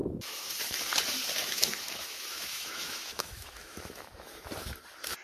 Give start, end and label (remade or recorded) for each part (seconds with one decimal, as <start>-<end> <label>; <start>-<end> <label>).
0.0-0.5 remade; 0.5-1.4 recorded; 1.4-4.5 remade; 4.5-5.2 recorded